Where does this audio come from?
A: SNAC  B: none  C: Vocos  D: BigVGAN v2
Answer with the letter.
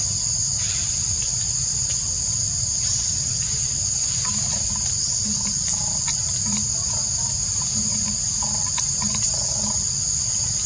B